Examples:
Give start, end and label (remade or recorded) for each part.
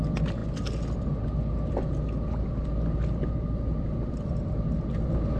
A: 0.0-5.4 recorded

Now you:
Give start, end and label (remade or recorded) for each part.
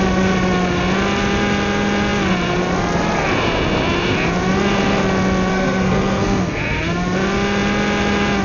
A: 0.0-5.5 recorded; 5.5-6.6 remade; 6.6-8.4 recorded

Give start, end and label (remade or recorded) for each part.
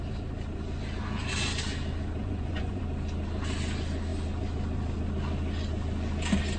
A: 0.0-2.2 recorded; 2.2-2.8 remade; 2.8-6.6 recorded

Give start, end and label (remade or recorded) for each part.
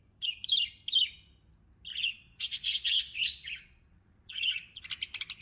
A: 0.0-1.9 recorded; 1.9-4.8 remade; 4.8-5.4 recorded